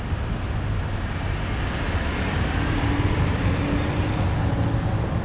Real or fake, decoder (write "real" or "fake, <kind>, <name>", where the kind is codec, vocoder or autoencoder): real